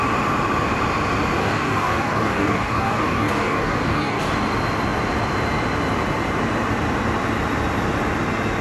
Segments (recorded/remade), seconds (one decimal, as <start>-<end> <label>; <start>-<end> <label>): 0.0-1.4 recorded; 1.4-4.3 remade; 4.3-8.6 recorded